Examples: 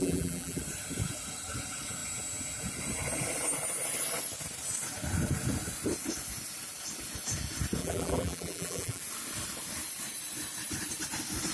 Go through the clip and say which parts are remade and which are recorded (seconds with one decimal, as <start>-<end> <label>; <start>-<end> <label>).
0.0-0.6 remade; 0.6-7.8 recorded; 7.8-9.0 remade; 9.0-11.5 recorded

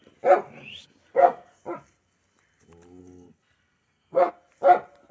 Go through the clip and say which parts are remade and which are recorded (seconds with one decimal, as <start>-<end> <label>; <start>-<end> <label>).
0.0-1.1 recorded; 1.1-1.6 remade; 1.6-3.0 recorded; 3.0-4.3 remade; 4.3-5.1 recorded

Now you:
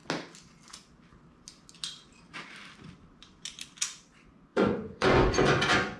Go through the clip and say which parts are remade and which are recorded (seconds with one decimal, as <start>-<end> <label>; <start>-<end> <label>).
0.0-4.5 recorded; 4.5-6.0 remade

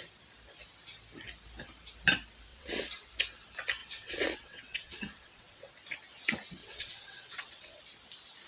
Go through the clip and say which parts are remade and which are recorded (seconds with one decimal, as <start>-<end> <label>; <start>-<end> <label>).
0.0-2.5 recorded; 2.5-3.1 remade; 3.1-3.8 recorded; 3.8-5.7 remade; 5.7-6.6 recorded; 6.6-7.8 remade; 7.8-8.5 recorded

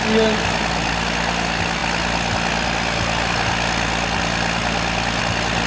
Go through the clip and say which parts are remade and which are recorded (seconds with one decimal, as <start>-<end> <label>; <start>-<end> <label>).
0.0-5.7 recorded

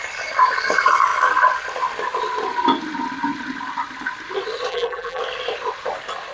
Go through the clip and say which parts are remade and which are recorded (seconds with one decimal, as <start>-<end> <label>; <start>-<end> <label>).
0.0-4.7 recorded; 4.7-5.2 remade; 5.2-6.3 recorded

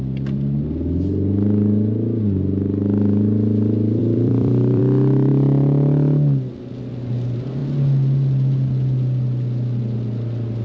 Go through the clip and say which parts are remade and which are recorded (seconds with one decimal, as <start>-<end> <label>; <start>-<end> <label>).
0.0-4.0 recorded; 4.0-4.8 remade; 4.8-10.6 recorded